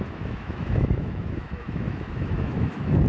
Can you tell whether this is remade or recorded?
remade